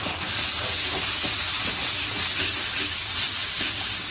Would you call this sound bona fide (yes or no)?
yes